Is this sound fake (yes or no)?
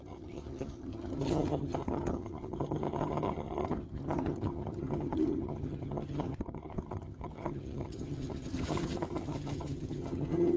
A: yes